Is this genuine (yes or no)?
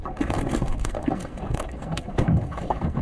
no